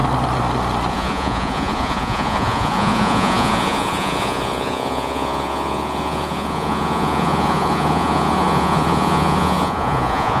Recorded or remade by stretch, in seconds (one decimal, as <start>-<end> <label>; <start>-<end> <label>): 0.0-0.9 recorded; 0.9-10.4 remade